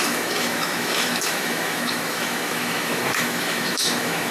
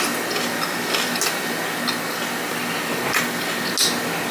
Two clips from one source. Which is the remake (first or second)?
first